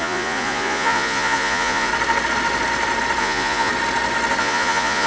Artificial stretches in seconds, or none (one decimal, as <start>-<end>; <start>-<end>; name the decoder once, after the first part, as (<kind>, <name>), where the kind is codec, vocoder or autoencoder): 0.0-1.9 (vocoder, Vocos); 3.2-3.7; 4.4-5.1